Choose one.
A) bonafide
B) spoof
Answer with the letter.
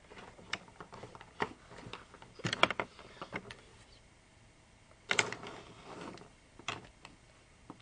A